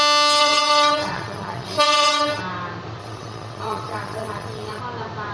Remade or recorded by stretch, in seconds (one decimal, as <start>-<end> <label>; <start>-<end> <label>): 0.0-0.4 recorded; 0.4-2.4 remade; 2.4-3.0 recorded; 3.0-4.8 remade; 4.8-5.3 recorded